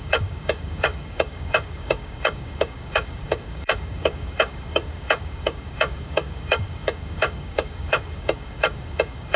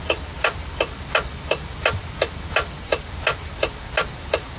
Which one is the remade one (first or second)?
first